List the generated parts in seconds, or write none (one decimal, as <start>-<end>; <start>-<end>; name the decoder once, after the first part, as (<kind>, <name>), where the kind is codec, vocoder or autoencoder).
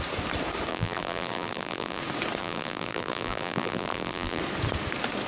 0.7-2.0 (vocoder, BigVGAN v2); 2.4-4.4